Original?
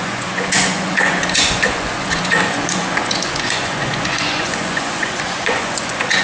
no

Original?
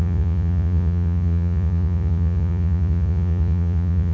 no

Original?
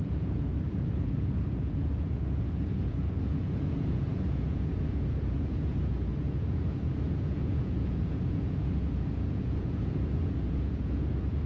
no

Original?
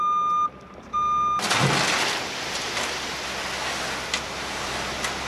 yes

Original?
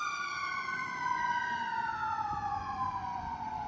no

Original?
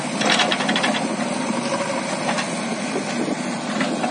yes